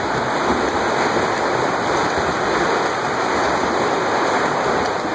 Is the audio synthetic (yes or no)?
no